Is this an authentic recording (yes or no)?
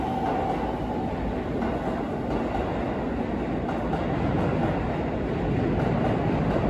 yes